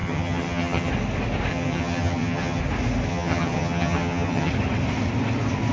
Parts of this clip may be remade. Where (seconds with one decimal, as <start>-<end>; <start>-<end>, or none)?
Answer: 0.0-0.9; 1.5-2.6; 3.1-4.5